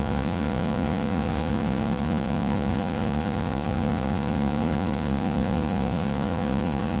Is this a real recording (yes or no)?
no